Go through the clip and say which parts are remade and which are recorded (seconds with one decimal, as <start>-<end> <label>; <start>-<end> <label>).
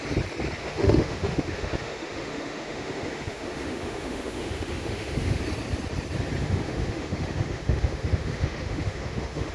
0.0-0.6 recorded; 0.6-5.4 remade; 5.4-6.4 recorded; 6.4-9.5 remade